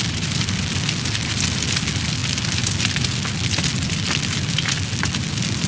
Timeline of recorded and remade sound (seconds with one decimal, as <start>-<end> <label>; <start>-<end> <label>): 0.0-5.7 recorded